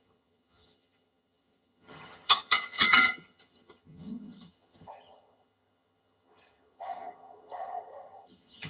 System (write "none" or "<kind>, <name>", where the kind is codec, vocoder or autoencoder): vocoder, HiFi-GAN